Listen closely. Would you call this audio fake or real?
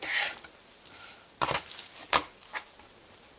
real